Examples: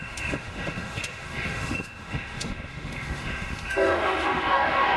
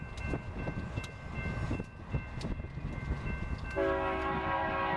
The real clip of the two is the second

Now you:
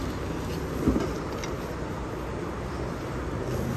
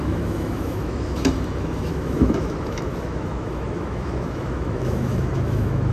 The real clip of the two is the first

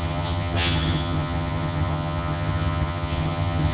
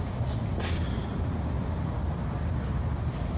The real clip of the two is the second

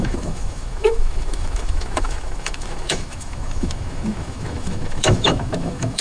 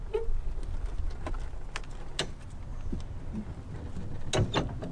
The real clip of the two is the second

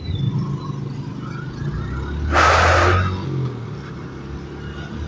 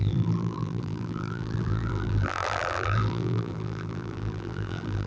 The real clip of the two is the first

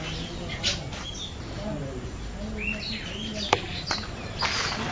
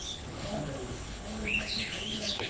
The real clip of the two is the first